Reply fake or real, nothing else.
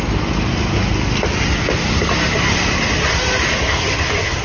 real